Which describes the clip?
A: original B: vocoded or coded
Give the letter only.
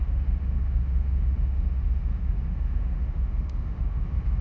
B